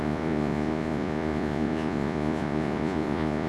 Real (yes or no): no